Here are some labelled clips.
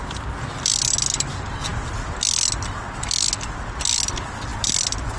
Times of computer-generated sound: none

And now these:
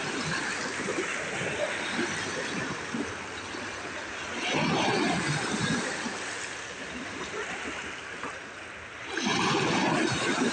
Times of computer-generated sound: none

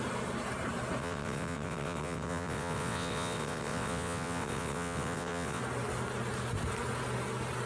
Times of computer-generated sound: 1.0-5.6 (vocoder, WaveNeXt)

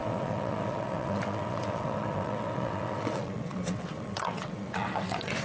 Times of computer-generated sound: 0.0-5.4 (vocoder, WaveNeXt)

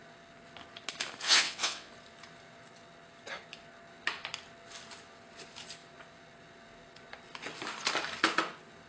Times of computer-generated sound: 1.2-1.9 (vocoder, WaveNeXt)

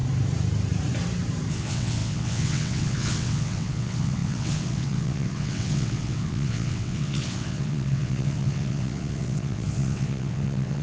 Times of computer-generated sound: 1.5-10.8 (vocoder, WaveNeXt)

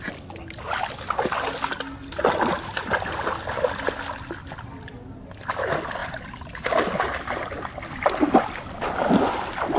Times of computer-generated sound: none

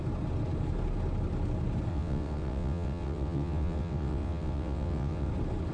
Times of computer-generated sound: 1.9-5.3 (vocoder, WaveNeXt)